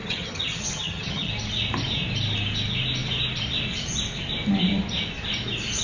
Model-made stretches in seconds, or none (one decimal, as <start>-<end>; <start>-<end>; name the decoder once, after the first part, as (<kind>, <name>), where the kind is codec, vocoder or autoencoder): 0.0-1.3 (vocoder, HiFi-GAN)